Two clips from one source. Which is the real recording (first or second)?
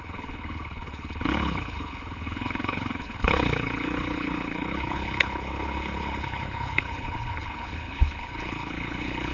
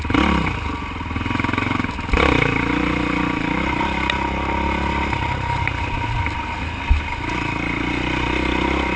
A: second